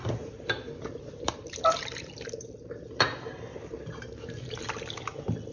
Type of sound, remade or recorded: recorded